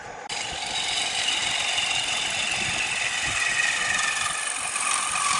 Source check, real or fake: real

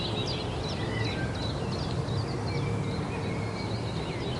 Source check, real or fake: real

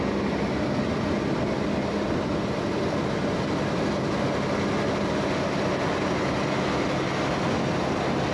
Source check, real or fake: real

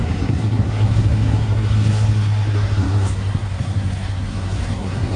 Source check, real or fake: fake